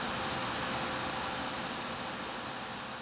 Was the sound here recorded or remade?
recorded